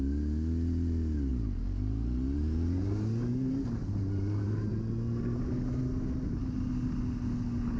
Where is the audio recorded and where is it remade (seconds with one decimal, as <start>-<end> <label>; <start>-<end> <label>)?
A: 0.0-1.3 recorded; 1.3-4.7 remade; 4.7-7.8 recorded